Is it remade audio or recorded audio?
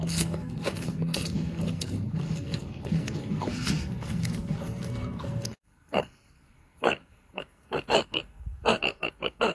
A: remade